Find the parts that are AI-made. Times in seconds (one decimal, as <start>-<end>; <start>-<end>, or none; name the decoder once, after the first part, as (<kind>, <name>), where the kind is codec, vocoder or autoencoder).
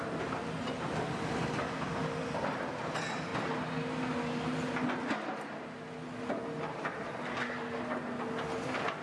none